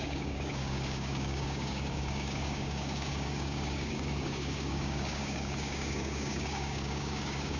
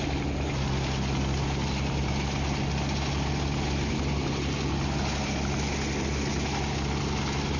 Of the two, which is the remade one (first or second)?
first